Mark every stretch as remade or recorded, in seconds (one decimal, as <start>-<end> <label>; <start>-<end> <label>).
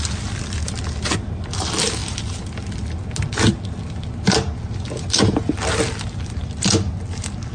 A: 0.0-7.5 recorded